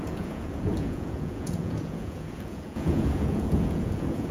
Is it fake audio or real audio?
fake